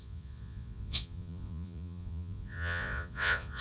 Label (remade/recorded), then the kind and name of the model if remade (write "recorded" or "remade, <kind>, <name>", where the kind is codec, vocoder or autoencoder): remade, vocoder, Vocos